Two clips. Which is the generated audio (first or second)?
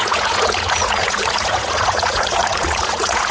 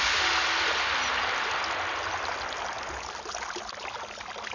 first